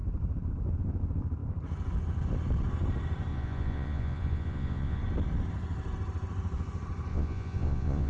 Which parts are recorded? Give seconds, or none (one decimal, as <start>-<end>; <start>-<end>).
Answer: 0.0-3.3; 5.0-7.1